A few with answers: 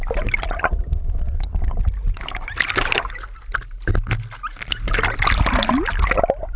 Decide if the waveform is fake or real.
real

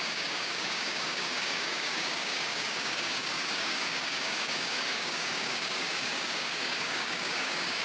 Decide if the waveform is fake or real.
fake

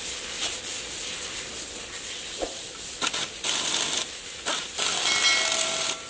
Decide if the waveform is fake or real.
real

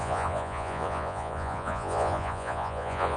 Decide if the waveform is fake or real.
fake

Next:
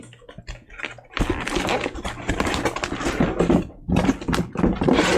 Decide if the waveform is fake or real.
fake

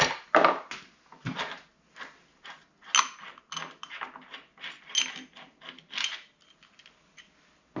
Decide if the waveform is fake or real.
real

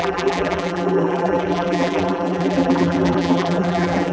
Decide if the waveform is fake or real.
fake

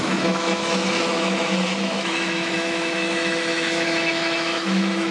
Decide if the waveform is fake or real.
fake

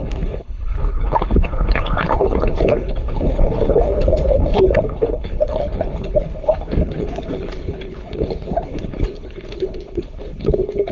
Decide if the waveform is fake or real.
fake